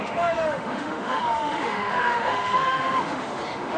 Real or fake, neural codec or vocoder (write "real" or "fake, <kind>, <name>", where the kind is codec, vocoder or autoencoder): fake, autoencoder, DAC-VAE